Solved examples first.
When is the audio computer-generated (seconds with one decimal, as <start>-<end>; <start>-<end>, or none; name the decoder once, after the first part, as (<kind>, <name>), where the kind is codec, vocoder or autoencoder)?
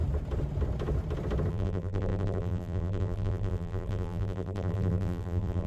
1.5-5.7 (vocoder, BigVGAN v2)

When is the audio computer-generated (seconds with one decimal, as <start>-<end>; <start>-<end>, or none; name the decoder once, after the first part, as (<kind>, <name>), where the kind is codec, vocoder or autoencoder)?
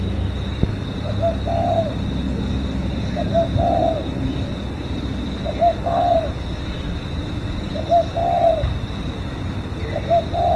none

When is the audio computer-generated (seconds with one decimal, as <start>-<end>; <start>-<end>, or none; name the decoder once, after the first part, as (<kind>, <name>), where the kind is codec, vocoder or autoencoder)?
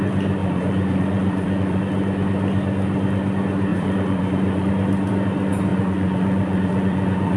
0.4-1.8 (vocoder, Vocos); 3.7-4.7; 5.7-7.4